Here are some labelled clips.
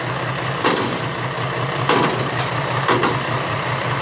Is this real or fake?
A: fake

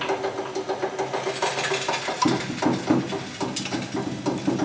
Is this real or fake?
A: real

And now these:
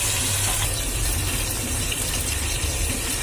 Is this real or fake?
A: fake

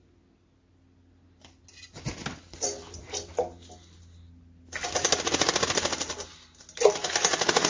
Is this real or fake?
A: real